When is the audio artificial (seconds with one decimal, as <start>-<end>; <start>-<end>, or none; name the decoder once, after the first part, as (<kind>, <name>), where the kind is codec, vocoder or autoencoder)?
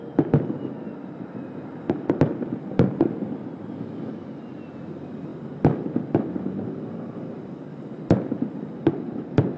none